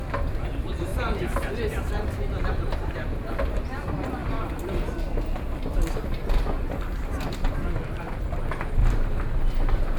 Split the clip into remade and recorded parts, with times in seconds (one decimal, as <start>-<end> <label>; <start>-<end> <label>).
0.0-0.9 recorded; 0.9-3.3 remade; 3.3-8.8 recorded; 8.8-10.0 remade